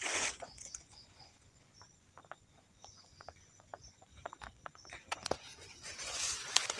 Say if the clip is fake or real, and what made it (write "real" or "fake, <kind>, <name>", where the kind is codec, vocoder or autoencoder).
fake, vocoder, Vocos